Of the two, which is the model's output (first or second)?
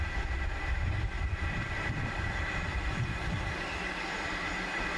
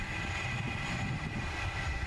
first